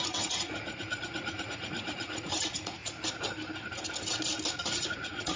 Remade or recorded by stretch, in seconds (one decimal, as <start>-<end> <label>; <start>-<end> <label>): 0.0-2.8 remade; 2.8-4.5 recorded; 4.5-5.4 remade

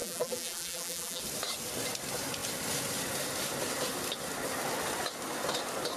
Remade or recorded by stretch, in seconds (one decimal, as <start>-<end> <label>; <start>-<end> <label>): 0.0-1.2 remade; 1.2-6.0 recorded

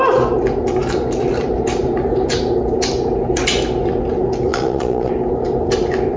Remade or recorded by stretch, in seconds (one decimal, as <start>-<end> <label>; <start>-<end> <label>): 0.0-4.5 recorded; 4.5-5.1 remade; 5.1-6.2 recorded

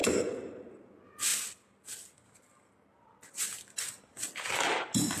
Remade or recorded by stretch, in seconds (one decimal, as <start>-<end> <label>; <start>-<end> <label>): 0.0-5.2 recorded

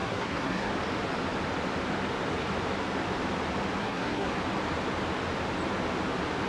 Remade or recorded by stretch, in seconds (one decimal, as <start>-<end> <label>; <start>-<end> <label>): 0.0-0.7 remade; 0.7-3.8 recorded; 3.8-4.3 remade; 4.3-6.5 recorded